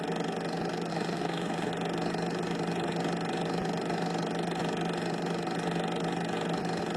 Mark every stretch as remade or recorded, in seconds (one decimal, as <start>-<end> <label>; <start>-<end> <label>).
0.0-0.9 recorded; 0.9-1.7 remade; 1.7-7.0 recorded